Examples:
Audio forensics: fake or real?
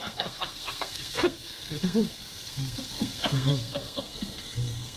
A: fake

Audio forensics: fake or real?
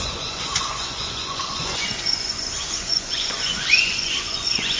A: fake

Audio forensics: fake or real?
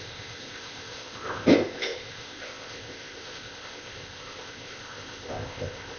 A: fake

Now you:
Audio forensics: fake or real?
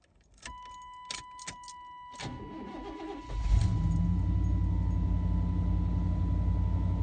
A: real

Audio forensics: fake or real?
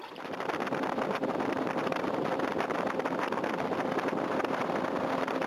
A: real